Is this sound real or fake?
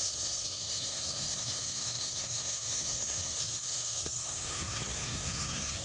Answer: fake